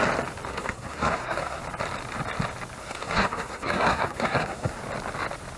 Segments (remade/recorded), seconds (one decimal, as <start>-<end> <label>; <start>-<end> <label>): 0.0-0.5 recorded; 0.5-1.6 remade; 1.6-2.8 recorded; 2.8-4.8 remade; 4.8-5.6 recorded